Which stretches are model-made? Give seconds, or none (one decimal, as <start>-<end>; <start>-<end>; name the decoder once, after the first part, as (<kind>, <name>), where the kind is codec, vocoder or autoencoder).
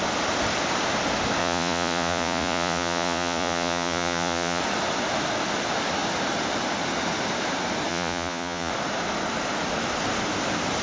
1.4-4.6 (vocoder, Vocos); 7.9-8.7